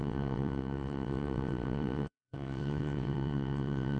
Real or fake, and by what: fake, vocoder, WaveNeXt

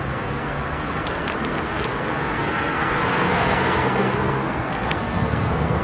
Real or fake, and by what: fake, codec, SNAC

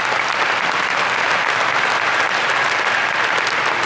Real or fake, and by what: real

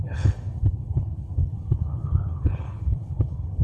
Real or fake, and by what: fake, codec, HILCodec